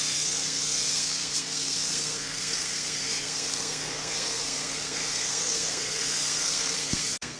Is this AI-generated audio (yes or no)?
yes